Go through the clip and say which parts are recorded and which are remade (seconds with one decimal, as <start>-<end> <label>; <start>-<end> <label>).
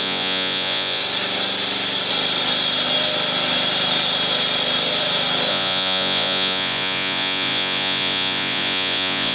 0.0-1.0 remade; 1.0-5.5 recorded; 5.5-9.3 remade